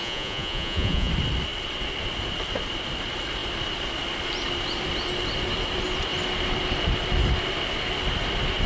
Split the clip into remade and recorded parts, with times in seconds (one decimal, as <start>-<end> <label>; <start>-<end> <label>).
0.0-1.1 remade; 1.1-8.7 recorded